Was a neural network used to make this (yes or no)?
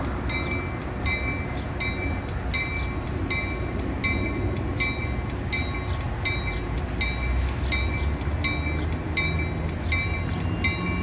no